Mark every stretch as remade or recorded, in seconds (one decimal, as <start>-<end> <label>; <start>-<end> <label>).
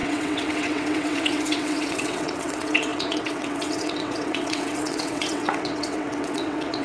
0.0-6.8 remade